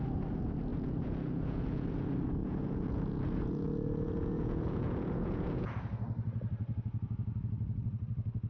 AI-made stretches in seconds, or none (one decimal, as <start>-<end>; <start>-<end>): 0.7-1.9; 2.4-5.7